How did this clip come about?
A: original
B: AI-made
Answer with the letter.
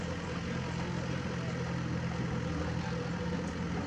A